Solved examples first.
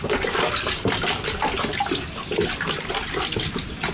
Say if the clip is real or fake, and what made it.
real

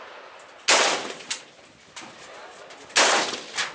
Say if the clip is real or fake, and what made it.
real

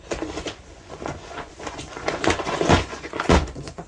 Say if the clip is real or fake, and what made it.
fake, vocoder, Vocos